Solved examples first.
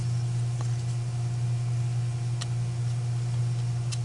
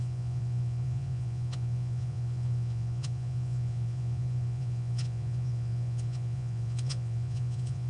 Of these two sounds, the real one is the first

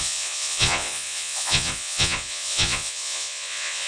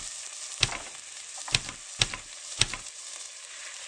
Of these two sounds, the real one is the second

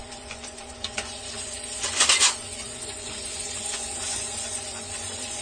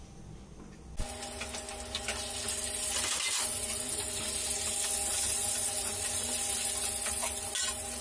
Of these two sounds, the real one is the second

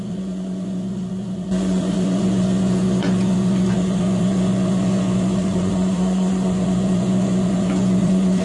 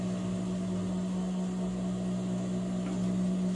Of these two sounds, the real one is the second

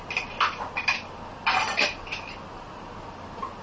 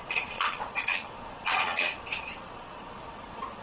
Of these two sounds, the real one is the first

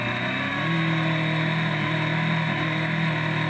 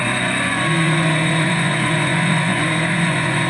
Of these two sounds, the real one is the first